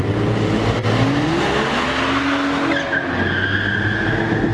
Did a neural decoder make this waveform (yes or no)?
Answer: no